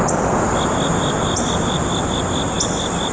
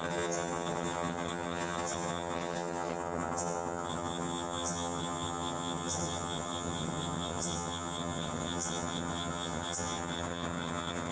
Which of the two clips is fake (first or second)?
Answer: second